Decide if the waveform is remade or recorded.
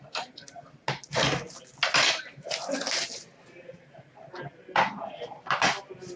recorded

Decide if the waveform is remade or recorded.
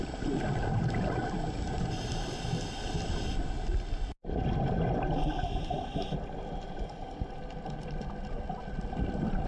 recorded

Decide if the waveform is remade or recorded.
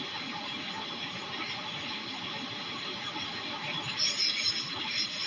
recorded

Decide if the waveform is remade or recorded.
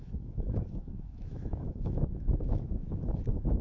remade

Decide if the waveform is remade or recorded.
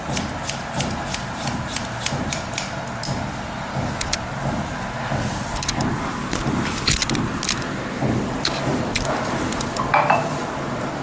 recorded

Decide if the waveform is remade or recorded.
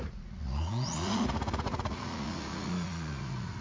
remade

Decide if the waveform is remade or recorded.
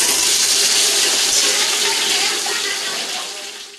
recorded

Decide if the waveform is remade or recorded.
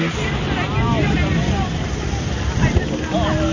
recorded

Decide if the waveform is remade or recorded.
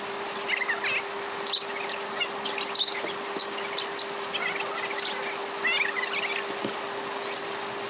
recorded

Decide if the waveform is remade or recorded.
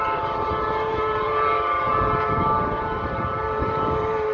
remade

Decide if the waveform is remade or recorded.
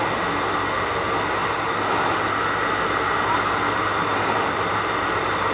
recorded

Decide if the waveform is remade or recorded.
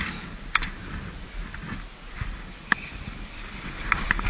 recorded